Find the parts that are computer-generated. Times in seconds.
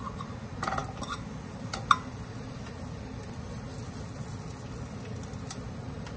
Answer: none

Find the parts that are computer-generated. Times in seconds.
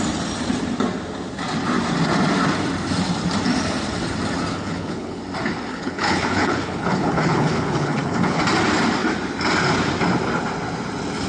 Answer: 4.5-5.2 (codec, HILCodec); 5.7-8.4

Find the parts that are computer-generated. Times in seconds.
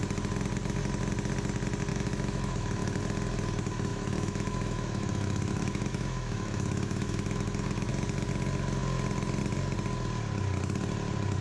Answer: 1.9-3.0 (autoencoder, DAC-VAE); 3.9-7.9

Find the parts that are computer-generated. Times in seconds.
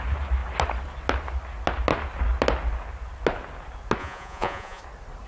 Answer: 4.0-4.8 (vocoder, Vocos)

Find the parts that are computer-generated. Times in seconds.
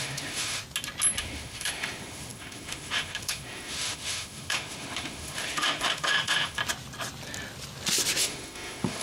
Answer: 0.0-0.6 (autoencoder, DAC-VAE); 1.2-6.6; 8.2-9.0